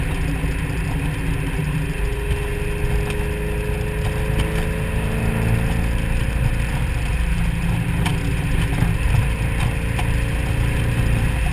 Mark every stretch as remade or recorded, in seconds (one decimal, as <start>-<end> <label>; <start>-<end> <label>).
0.0-11.5 recorded